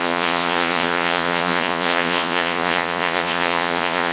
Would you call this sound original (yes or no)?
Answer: no